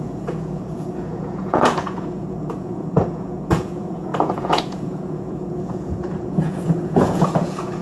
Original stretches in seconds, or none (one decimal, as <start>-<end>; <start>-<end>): none